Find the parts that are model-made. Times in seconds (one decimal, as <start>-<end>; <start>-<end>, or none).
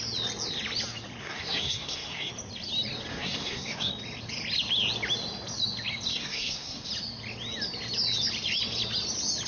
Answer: 1.2-2.3; 3.1-3.9; 6.1-6.9